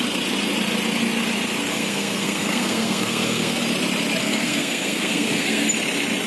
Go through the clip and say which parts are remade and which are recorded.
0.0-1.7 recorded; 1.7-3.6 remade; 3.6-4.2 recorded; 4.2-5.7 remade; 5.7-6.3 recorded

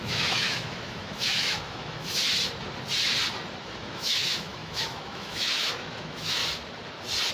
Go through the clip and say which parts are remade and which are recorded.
0.0-2.3 remade; 2.3-3.6 recorded; 3.6-6.4 remade; 6.4-7.3 recorded

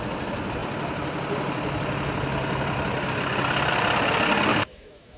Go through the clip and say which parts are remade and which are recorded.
0.0-4.5 recorded; 4.5-5.2 remade

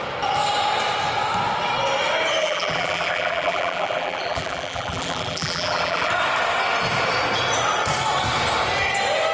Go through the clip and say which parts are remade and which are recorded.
0.0-2.4 recorded; 2.4-6.1 remade; 6.1-9.3 recorded

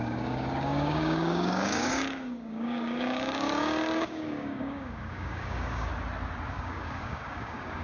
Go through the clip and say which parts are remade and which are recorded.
0.0-5.9 remade; 5.9-6.5 recorded; 6.5-7.8 remade